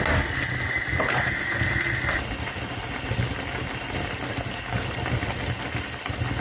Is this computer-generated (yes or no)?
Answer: no